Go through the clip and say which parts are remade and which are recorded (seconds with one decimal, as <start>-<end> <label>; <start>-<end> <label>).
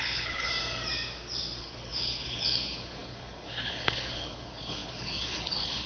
0.0-0.5 remade; 0.5-1.6 recorded; 1.6-5.9 remade